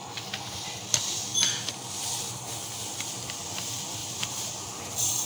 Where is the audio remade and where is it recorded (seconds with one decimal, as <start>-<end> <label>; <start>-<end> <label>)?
0.0-5.3 recorded